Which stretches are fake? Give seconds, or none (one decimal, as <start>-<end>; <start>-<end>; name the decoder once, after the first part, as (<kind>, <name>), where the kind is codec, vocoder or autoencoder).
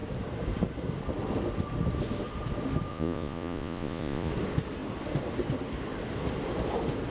2.9-4.3 (vocoder, Vocos)